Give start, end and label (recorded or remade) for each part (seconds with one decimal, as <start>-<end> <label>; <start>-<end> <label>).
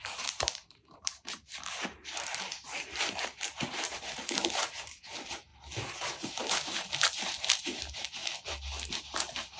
0.0-5.5 remade; 5.5-6.5 recorded; 6.5-8.2 remade; 8.2-8.9 recorded; 8.9-9.6 remade